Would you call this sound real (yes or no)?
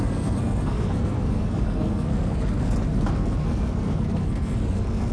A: no